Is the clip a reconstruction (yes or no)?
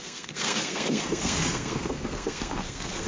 yes